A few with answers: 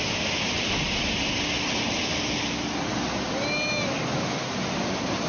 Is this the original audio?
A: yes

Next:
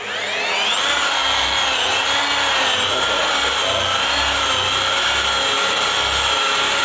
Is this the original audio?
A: yes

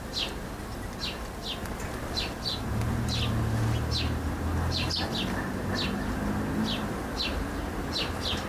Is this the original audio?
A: yes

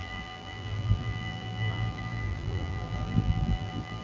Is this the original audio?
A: no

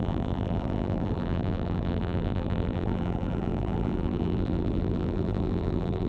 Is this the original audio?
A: no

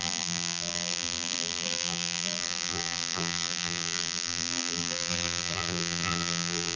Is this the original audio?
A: no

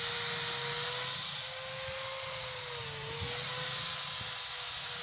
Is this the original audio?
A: yes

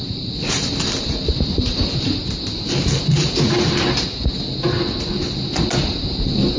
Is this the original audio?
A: yes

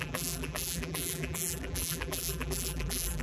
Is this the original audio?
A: no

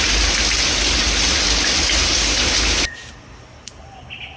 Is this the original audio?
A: yes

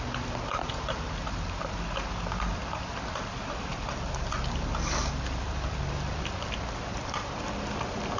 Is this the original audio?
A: no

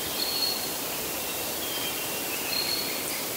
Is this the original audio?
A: no